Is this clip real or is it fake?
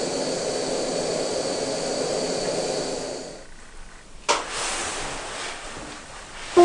real